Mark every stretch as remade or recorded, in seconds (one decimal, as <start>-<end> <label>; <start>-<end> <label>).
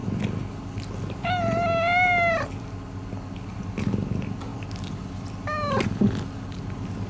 0.0-7.1 recorded